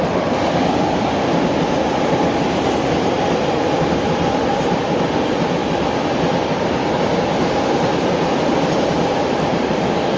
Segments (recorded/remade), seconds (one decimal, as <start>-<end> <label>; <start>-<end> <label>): 0.0-10.2 recorded